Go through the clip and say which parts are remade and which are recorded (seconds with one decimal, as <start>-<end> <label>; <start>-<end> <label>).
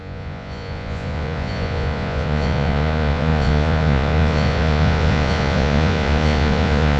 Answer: 0.0-7.0 remade